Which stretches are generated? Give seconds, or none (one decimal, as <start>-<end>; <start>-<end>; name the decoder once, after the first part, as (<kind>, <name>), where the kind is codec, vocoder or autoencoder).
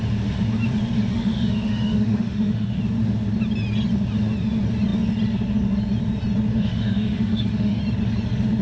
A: 1.1-2.8 (autoencoder, DAC-VAE); 6.5-7.8